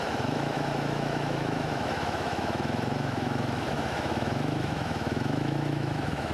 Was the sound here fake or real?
fake